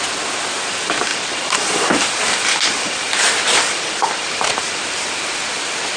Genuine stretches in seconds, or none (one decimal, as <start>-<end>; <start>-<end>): 0.0-1.1; 4.7-6.0